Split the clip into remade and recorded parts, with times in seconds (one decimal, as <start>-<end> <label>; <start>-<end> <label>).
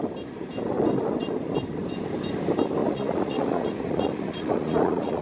0.0-2.8 recorded; 2.8-5.2 remade